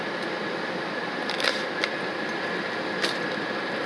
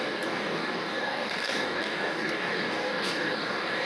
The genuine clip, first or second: first